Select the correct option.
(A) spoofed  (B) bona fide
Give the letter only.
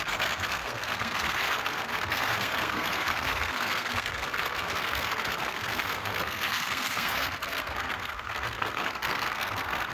A